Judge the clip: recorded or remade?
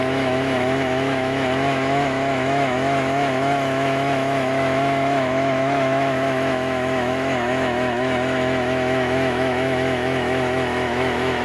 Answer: remade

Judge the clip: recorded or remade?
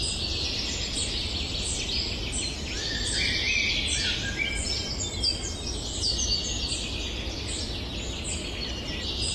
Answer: recorded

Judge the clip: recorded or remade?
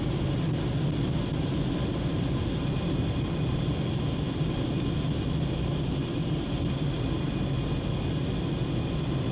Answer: recorded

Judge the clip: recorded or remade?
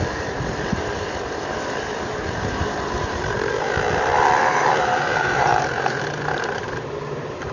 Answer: remade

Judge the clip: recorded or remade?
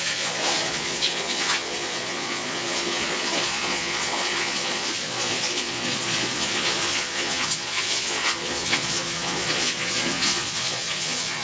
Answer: remade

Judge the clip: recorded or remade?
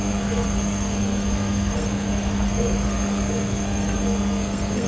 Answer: remade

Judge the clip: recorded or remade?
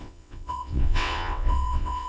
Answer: remade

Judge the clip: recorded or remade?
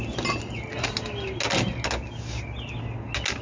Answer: recorded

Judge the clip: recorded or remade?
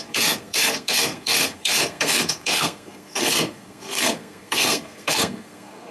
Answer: remade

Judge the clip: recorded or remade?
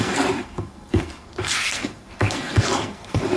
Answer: remade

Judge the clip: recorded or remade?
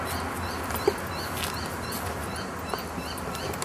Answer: recorded